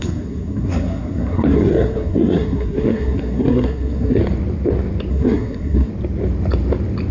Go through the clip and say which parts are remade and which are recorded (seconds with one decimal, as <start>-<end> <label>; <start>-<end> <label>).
0.0-4.2 remade; 4.2-5.1 recorded; 5.1-5.9 remade; 5.9-7.1 recorded